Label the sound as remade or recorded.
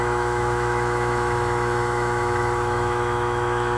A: remade